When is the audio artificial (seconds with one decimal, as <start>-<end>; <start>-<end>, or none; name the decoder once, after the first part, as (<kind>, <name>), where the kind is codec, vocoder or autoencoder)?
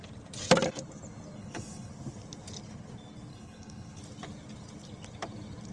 1.4-1.9 (codec, HILCodec); 3.3-4.0